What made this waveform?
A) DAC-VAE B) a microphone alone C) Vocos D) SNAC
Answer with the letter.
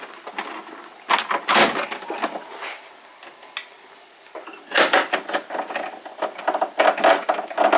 B